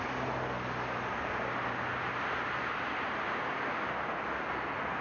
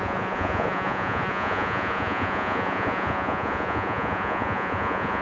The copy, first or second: second